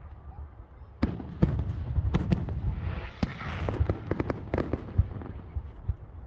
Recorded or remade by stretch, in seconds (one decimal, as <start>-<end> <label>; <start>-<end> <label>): 0.0-6.3 recorded